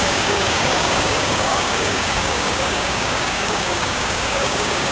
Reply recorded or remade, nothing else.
remade